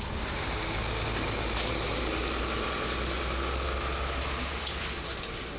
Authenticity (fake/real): real